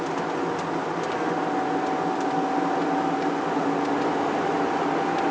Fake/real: real